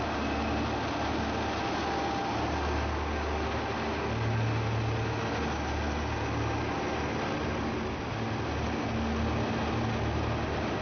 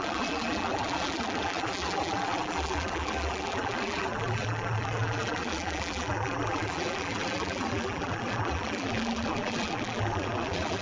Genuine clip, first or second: first